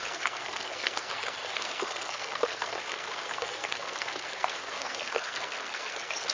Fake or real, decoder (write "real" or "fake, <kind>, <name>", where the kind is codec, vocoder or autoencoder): fake, codec, SNAC